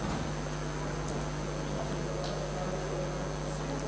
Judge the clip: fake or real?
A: real